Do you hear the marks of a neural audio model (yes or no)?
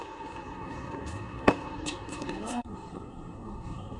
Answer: yes